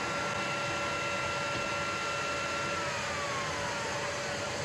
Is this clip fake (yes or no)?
no